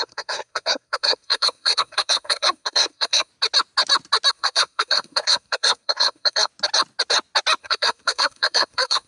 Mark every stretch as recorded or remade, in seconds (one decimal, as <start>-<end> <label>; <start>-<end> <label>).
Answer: 0.0-3.3 remade; 3.3-4.3 recorded; 4.3-6.5 remade; 6.5-7.6 recorded; 7.6-9.1 remade